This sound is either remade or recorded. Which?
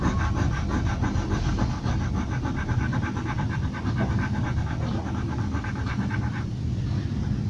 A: recorded